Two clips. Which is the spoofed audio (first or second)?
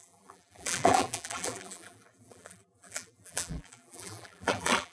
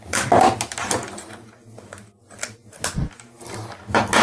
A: first